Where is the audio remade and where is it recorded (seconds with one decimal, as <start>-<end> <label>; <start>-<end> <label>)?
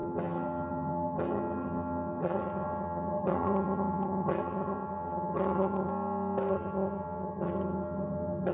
0.0-5.9 remade; 5.9-6.5 recorded; 6.5-8.5 remade